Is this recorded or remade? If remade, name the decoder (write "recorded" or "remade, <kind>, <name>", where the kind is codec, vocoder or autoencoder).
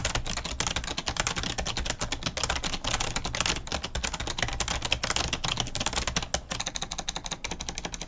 recorded